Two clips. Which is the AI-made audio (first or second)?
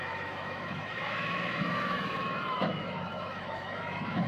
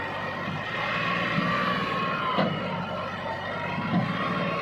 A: first